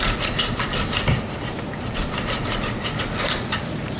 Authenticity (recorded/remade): recorded